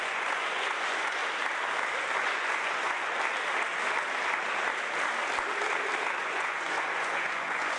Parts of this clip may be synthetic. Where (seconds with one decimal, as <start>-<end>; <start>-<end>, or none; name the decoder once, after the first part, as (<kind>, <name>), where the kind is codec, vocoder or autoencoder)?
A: 0.0-1.2 (vocoder, Vocos); 2.2-3.1; 6.2-7.8